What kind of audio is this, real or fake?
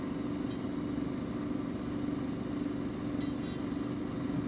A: real